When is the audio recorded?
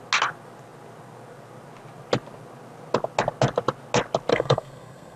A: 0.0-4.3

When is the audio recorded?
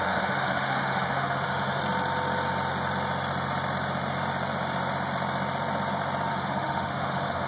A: 1.8-6.3